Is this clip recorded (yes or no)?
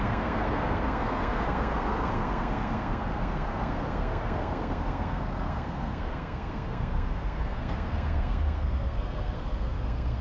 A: no